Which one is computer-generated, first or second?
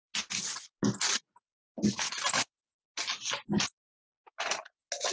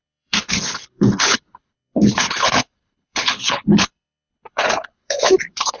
second